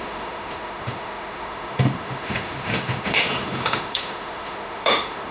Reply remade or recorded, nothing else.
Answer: remade